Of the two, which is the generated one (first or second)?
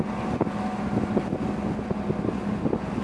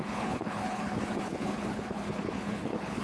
second